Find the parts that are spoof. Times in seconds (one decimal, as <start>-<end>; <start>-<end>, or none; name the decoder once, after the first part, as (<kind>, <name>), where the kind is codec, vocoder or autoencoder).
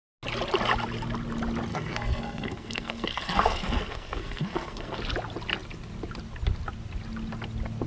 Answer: 1.7-5.0 (codec, SNAC)